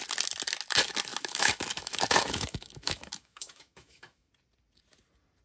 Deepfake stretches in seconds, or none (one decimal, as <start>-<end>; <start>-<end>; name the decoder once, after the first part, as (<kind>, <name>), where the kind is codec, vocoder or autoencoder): 1.1-4.3 (autoencoder, DAC-VAE)